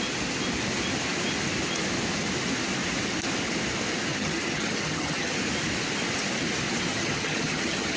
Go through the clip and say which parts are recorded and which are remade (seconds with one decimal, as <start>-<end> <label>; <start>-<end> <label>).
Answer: 0.0-4.1 recorded; 4.1-5.4 remade; 5.4-6.9 recorded; 6.9-8.0 remade